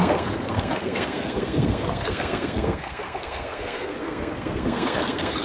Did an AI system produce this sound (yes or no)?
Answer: yes